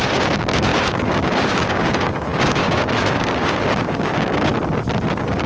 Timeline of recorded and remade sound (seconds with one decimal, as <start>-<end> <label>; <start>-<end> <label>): 0.0-4.5 remade; 4.5-5.1 recorded; 5.1-5.5 remade